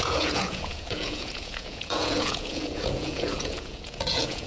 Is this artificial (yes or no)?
yes